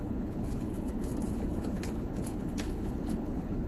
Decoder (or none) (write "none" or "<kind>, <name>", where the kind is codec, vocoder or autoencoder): codec, HILCodec